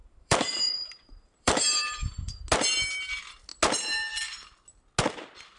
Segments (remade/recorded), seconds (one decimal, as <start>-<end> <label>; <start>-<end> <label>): 0.0-2.4 remade; 2.4-5.6 recorded